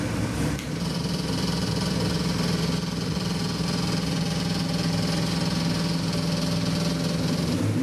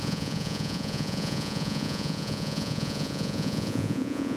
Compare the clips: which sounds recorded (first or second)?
first